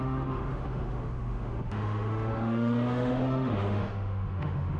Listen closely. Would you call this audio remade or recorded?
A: remade